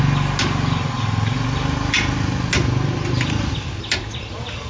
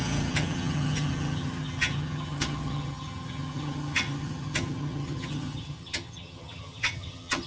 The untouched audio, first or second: first